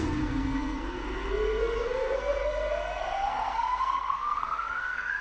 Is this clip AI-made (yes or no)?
yes